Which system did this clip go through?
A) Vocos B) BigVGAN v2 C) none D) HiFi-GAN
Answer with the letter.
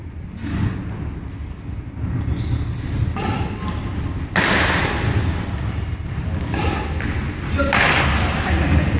C